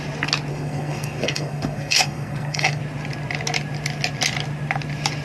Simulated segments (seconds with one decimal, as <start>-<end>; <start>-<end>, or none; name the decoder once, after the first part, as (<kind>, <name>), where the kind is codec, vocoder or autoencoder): 0.5-2.8 (codec, SNAC)